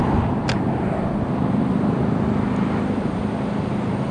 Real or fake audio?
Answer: real